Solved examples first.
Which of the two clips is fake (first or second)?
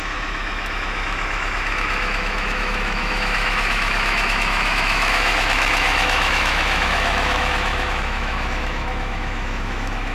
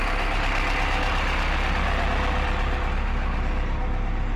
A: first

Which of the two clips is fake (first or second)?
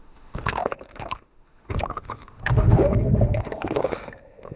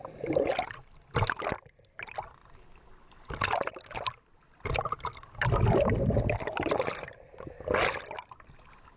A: first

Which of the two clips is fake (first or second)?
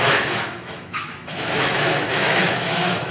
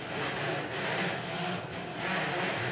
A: first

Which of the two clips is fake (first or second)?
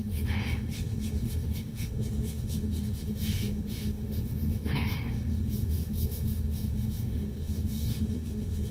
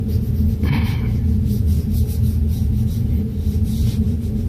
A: first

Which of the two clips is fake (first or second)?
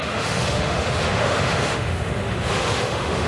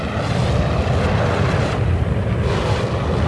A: first